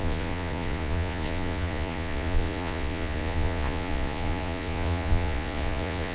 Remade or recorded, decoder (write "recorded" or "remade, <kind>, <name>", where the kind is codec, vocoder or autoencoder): remade, vocoder, Vocos